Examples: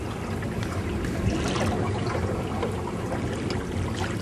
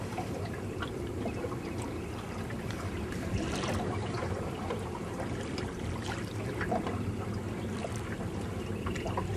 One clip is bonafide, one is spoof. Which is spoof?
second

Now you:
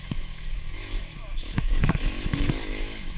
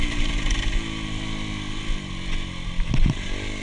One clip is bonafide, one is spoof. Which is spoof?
first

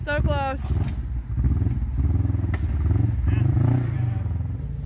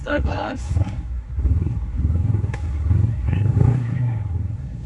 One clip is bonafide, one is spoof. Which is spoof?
second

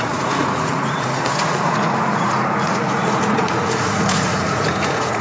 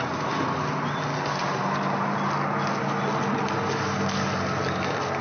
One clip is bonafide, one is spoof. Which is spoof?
first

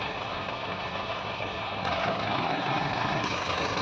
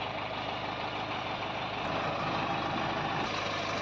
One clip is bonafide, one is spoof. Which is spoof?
first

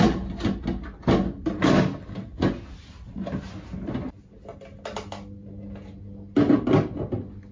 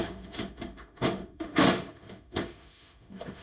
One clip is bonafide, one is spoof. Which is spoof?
second